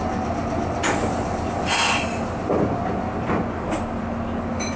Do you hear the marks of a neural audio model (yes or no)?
no